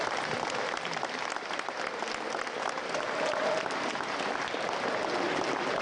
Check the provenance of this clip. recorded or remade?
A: recorded